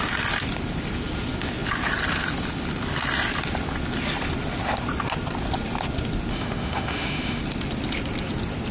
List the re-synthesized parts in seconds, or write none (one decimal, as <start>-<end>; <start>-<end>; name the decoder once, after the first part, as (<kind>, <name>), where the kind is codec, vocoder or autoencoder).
6.3-7.4 (autoencoder, DAC-VAE)